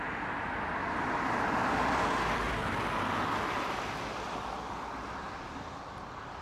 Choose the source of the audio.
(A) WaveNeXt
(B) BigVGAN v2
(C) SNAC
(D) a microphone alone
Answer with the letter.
B